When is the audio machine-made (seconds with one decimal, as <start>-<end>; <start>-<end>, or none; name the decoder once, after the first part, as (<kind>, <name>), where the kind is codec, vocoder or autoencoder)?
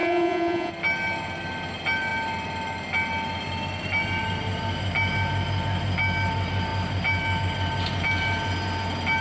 0.0-0.7 (vocoder, Vocos)